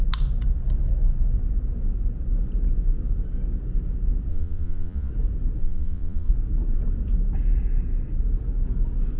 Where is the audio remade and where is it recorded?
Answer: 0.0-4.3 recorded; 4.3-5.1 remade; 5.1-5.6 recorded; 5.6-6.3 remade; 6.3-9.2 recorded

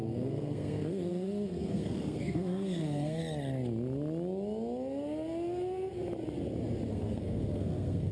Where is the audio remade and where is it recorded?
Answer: 0.0-3.2 remade; 3.2-6.9 recorded; 6.9-8.1 remade

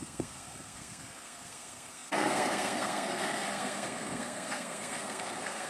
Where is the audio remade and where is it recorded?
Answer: 0.0-5.7 remade

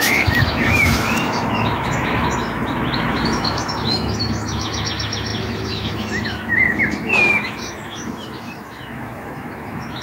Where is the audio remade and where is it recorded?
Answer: 0.0-10.0 remade

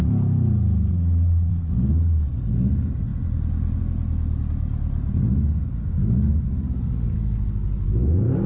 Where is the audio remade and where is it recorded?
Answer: 0.0-0.9 recorded; 0.9-1.7 remade; 1.7-8.5 recorded

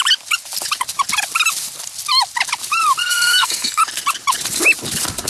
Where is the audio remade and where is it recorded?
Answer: 0.0-3.0 recorded; 3.0-3.8 remade; 3.8-5.3 recorded

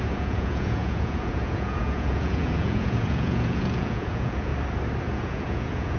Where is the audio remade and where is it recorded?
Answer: 0.0-4.5 remade; 4.5-5.0 recorded; 5.0-6.0 remade